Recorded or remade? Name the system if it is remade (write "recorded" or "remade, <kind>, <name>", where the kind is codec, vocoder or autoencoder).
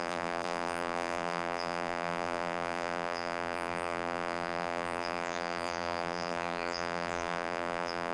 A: remade, vocoder, BigVGAN v2